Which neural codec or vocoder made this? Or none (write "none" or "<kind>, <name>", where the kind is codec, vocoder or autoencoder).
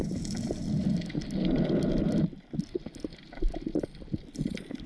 none